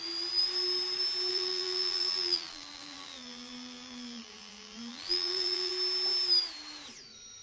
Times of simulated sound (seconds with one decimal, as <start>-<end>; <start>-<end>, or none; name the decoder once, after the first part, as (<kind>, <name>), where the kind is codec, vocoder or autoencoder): 1.3-5.7 (vocoder, BigVGAN v2)